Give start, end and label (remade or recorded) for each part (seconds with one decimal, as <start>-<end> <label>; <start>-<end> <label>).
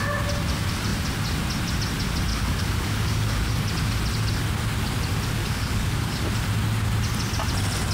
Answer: 0.0-2.3 recorded; 2.3-3.5 remade; 3.5-5.4 recorded; 5.4-6.1 remade; 6.1-7.9 recorded